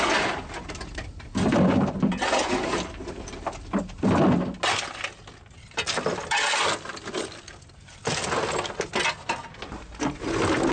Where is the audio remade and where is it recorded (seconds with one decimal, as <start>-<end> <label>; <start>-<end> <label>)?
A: 0.0-10.7 recorded